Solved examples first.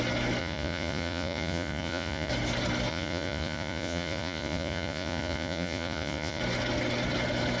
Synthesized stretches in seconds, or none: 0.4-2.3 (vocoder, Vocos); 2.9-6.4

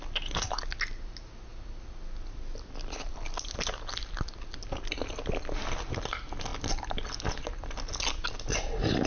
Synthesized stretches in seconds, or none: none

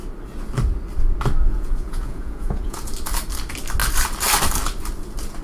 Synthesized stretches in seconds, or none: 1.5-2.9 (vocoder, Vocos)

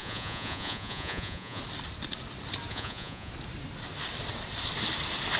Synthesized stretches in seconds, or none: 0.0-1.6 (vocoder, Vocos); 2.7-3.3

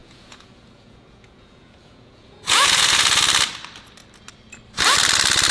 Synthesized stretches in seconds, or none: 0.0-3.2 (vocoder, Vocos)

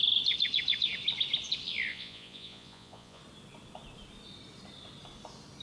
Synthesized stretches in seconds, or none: 1.9-3.2 (vocoder, Vocos)

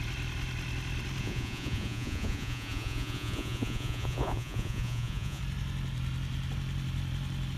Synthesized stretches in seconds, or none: 1.2-5.4 (vocoder, Vocos)

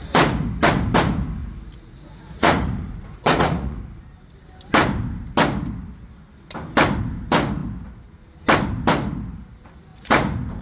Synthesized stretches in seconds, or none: 1.4-3.8 (vocoder, Vocos); 9.9-10.6